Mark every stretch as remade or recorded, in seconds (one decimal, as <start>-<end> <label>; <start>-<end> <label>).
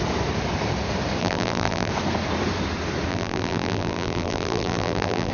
0.0-1.2 recorded; 1.2-1.9 remade; 1.9-3.1 recorded; 3.1-5.3 remade